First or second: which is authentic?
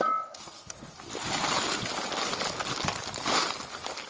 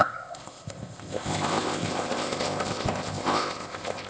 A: first